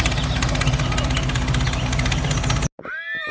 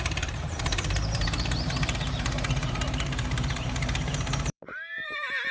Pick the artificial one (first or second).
second